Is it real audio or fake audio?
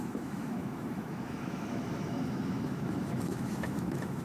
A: fake